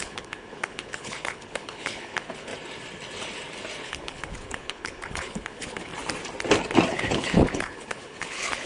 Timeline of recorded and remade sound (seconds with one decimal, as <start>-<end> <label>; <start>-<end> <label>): 0.0-2.5 remade; 2.5-3.8 recorded; 3.8-5.9 remade; 5.9-6.9 recorded; 6.9-8.7 remade